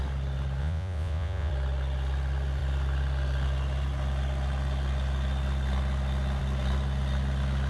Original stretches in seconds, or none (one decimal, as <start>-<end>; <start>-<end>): 0.0-0.6; 1.5-7.7